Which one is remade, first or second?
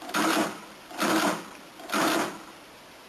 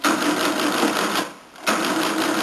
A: first